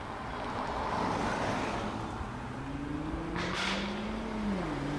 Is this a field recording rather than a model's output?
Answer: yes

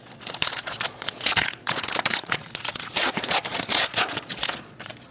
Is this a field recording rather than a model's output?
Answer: no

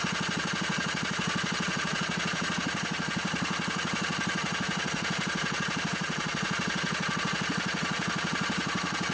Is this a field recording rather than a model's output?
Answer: no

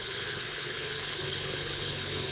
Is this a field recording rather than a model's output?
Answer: no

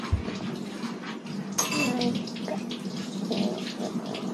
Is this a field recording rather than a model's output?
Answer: yes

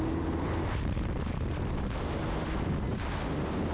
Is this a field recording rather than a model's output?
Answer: yes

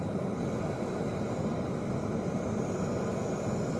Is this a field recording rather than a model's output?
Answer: yes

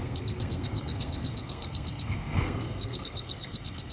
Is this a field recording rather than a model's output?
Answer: no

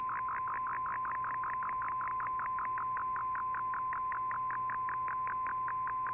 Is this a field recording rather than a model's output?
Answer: yes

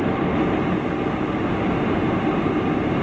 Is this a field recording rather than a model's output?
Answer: yes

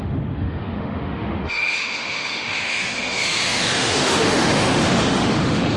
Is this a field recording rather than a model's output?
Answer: no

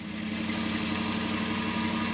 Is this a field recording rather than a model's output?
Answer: yes